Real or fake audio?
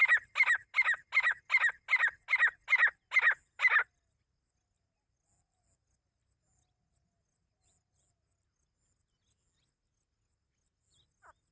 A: real